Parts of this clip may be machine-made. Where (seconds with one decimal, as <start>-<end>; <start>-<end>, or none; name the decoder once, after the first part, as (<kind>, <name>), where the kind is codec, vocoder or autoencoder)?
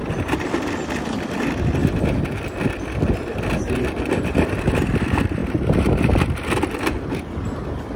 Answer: none